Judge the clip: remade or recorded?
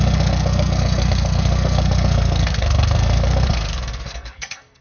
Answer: remade